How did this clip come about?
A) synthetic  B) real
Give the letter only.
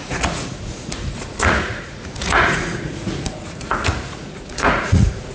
A